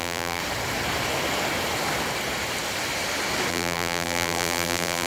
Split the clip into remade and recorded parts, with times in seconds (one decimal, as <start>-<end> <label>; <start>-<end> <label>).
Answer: 0.0-0.4 remade; 0.4-3.5 recorded; 3.5-5.1 remade